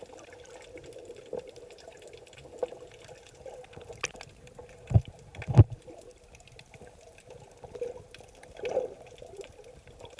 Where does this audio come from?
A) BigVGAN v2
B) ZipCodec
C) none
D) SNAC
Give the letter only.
C